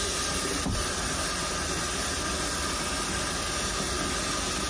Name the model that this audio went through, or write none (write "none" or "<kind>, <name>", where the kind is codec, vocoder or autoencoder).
none